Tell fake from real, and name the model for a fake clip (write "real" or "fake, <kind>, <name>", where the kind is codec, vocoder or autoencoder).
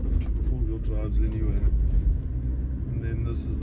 real